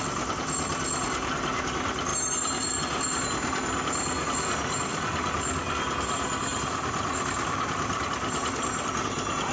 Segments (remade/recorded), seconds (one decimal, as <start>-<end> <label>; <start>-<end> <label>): 0.0-2.1 recorded; 2.1-2.8 remade; 2.8-4.9 recorded; 4.9-8.9 remade; 8.9-9.5 recorded